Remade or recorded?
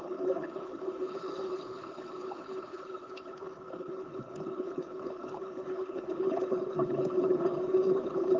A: remade